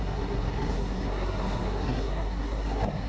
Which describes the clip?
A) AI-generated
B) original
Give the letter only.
A